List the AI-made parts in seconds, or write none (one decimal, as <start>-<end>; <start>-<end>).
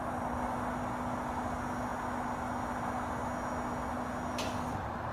none